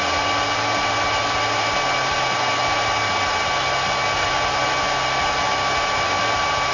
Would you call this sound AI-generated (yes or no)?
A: no